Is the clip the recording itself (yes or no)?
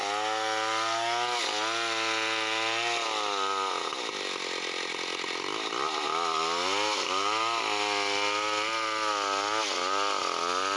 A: yes